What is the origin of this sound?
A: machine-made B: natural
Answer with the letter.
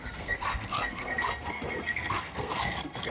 A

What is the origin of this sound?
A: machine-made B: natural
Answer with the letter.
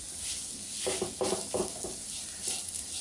B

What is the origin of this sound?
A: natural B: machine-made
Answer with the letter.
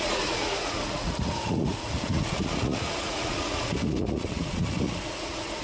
B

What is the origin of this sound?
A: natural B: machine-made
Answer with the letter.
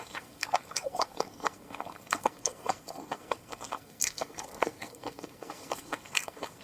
B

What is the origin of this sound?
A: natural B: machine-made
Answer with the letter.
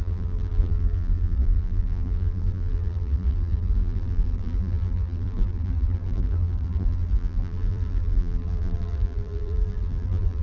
B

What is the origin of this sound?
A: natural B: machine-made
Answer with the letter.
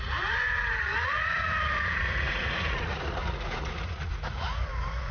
B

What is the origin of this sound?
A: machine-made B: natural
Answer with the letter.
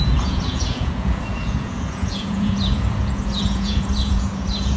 A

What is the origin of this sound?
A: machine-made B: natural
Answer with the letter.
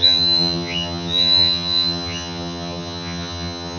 A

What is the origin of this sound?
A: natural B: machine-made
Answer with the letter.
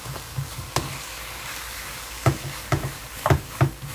B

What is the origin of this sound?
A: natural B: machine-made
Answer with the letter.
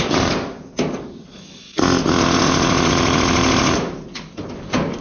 A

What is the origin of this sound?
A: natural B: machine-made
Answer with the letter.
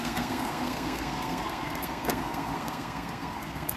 B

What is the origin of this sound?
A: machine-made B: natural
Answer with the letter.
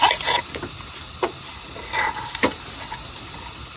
B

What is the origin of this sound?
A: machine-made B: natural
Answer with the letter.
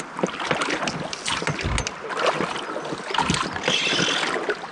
B